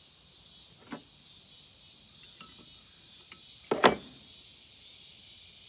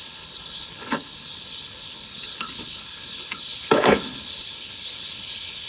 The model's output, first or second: second